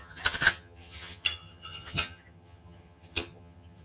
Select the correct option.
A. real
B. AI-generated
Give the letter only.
B